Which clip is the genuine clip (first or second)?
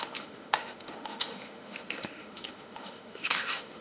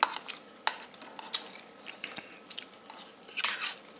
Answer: second